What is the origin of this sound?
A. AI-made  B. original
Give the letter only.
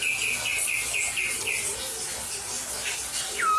B